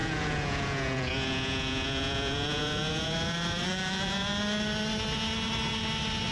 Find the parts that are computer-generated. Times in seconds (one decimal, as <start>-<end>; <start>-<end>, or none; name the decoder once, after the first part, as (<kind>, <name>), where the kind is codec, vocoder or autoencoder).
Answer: 0.0-4.3 (vocoder, Vocos)